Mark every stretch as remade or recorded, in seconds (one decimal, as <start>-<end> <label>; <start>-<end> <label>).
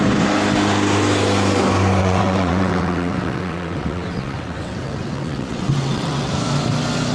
0.0-2.0 recorded; 2.0-6.3 remade; 6.3-7.1 recorded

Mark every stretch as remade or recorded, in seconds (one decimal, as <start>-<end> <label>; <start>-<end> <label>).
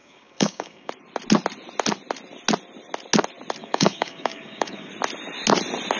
0.0-0.9 remade; 0.9-3.6 recorded; 3.6-4.9 remade; 4.9-6.0 recorded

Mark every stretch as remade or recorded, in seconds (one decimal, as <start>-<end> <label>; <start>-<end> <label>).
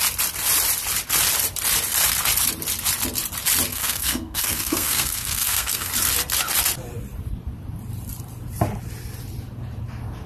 0.0-3.7 recorded; 3.7-5.9 remade; 5.9-10.3 recorded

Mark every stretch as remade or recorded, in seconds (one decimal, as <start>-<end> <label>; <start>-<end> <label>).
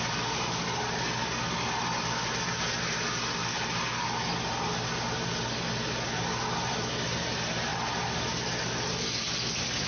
0.0-9.9 recorded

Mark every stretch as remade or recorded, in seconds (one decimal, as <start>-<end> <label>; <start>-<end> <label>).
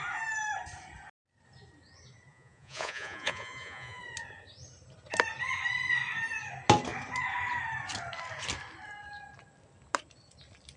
0.0-2.3 recorded; 2.3-4.0 remade; 4.0-10.8 recorded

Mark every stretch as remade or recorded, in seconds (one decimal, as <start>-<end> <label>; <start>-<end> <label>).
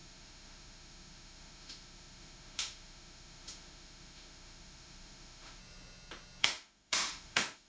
0.0-5.6 remade; 5.6-6.4 recorded; 6.4-7.7 remade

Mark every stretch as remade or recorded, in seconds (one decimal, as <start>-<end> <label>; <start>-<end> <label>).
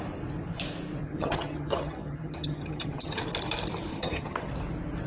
0.0-1.0 recorded; 1.0-3.2 remade; 3.2-3.9 recorded; 3.9-4.5 remade; 4.5-5.1 recorded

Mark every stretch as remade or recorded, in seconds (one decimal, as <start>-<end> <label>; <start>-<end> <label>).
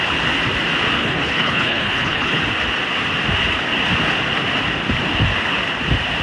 0.0-1.0 recorded; 1.0-2.4 remade; 2.4-6.2 recorded